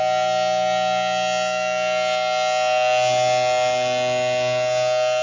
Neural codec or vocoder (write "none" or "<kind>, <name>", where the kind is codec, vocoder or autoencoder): none